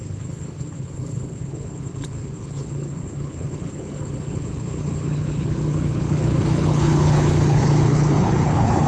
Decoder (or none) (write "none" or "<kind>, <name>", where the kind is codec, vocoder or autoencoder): codec, HILCodec